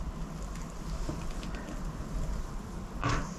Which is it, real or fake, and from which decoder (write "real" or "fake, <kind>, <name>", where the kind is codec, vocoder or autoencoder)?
real